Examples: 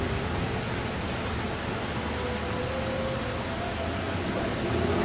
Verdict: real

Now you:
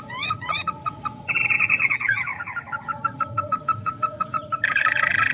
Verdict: fake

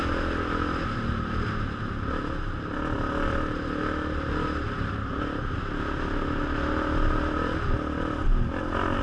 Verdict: real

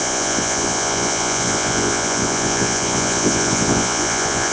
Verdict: fake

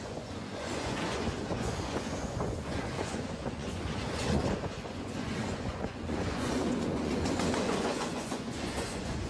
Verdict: fake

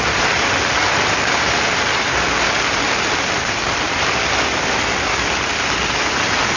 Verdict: real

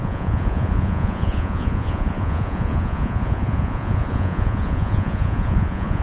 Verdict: fake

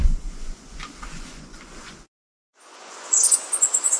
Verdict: fake